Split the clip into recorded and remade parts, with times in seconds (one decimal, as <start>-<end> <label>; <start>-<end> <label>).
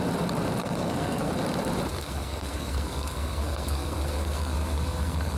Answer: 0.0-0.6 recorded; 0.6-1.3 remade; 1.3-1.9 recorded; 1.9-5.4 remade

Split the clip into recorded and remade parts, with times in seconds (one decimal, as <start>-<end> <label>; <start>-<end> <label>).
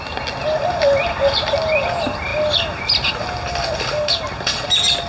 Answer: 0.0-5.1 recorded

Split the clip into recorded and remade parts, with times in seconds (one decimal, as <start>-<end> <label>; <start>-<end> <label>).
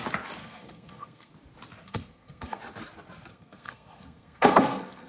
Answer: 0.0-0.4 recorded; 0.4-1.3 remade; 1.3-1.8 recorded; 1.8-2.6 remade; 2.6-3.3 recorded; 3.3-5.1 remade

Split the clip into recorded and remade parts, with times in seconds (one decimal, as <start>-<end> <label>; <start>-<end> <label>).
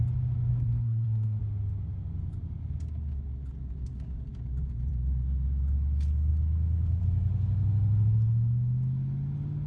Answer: 0.0-0.5 recorded; 0.5-1.4 remade; 1.4-9.7 recorded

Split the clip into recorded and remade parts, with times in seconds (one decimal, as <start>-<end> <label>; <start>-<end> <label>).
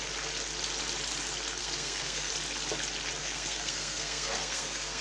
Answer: 0.0-1.6 recorded; 1.6-2.3 remade; 2.3-3.2 recorded; 3.2-5.0 remade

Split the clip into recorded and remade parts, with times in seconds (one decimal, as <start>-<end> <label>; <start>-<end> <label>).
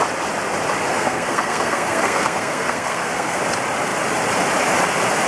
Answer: 0.0-0.9 recorded; 0.9-3.4 remade; 3.4-5.3 recorded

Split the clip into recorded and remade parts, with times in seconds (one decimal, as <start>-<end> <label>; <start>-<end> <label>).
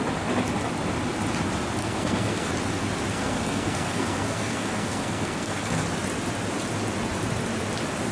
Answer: 0.0-1.8 recorded; 1.8-2.5 remade; 2.5-3.1 recorded; 3.1-5.8 remade; 5.8-8.1 recorded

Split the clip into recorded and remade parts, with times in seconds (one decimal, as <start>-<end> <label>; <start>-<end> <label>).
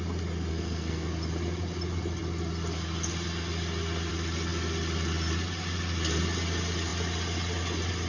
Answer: 0.0-0.5 recorded; 0.5-1.1 remade; 1.1-8.1 recorded